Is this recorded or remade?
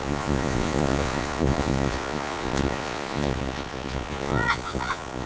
remade